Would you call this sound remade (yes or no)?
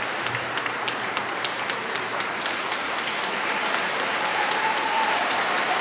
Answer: yes